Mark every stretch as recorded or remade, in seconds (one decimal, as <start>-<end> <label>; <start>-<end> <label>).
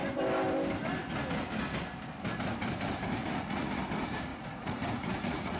0.0-3.2 recorded; 3.2-3.8 remade; 3.8-4.3 recorded; 4.3-5.6 remade